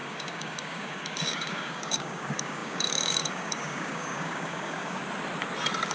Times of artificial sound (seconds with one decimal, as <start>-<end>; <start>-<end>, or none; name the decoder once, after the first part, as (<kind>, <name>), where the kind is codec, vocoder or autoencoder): 0.0-5.0 (codec, DAC)

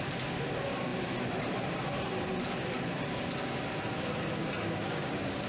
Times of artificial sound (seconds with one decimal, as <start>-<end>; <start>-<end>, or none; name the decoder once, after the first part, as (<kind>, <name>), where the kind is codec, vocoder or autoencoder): 4.4-5.5 (codec, DAC)

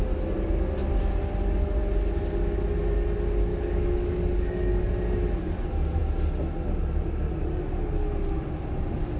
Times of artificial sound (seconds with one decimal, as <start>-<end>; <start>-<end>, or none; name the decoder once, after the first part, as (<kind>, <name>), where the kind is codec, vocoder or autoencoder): 3.5-4.8 (codec, DAC)

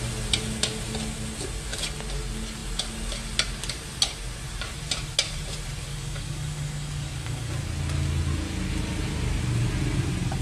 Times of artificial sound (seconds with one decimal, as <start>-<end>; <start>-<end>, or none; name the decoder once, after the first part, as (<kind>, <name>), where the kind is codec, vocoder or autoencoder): 5.9-7.5 (codec, DAC)

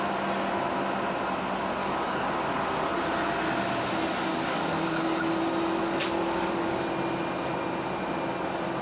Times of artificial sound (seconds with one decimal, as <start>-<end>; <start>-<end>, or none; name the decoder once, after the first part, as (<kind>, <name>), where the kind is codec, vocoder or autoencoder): 1.8-2.3 (codec, DAC); 4.3-5.3; 5.8-6.8

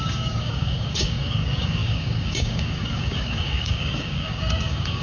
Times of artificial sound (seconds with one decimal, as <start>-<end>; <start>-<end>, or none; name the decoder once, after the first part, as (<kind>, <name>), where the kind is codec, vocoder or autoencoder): 0.0-5.0 (codec, DAC)

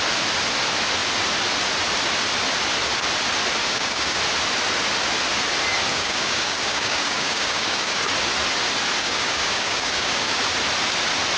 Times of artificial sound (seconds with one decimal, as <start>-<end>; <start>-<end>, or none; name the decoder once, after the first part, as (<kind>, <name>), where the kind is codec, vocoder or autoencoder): 3.6-4.2 (codec, DAC); 5.9-8.0; 9.0-10.4

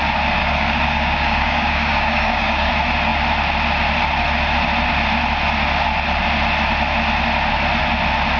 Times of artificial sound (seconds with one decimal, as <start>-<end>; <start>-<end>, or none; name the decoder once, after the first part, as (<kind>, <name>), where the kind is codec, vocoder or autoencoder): 0.4-2.7 (codec, DAC)